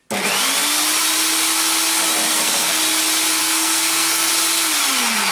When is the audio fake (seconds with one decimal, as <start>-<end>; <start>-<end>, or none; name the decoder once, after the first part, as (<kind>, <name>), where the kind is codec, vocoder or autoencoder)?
2.3-2.8 (codec, SNAC); 3.4-4.3